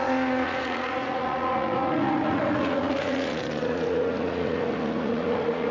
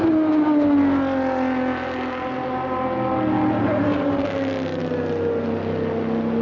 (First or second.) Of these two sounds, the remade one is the first